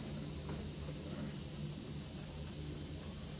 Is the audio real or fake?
real